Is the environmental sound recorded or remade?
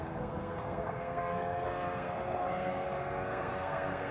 remade